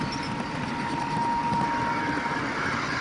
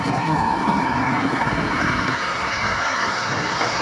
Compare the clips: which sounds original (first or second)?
first